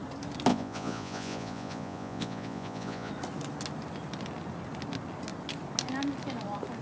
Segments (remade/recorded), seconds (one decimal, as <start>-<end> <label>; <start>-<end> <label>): 0.0-0.5 recorded; 0.5-3.1 remade; 3.1-6.8 recorded